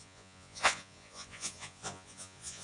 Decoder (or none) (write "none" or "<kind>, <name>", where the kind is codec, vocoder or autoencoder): vocoder, Vocos